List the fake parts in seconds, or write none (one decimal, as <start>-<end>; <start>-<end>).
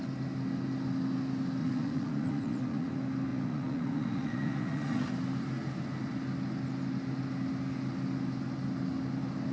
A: 1.6-2.9; 3.3-5.1